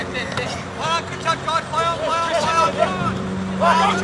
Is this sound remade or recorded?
recorded